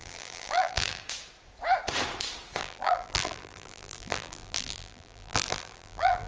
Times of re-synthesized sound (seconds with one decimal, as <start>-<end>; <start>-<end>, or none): 0.0-1.0; 2.6-6.3